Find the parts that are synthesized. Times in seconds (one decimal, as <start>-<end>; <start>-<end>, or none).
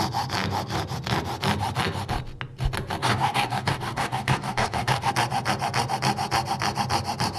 3.0-5.1